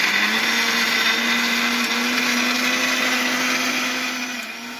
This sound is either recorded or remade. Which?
recorded